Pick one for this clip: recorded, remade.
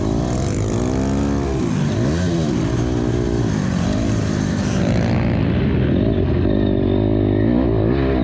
recorded